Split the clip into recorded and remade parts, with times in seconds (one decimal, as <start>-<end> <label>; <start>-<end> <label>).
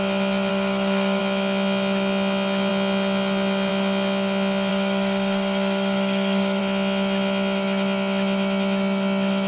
0.0-0.5 recorded; 0.5-1.2 remade; 1.2-4.7 recorded; 4.7-6.6 remade; 6.6-9.5 recorded